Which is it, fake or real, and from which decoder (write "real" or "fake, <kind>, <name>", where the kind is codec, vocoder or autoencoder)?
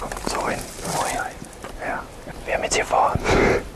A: real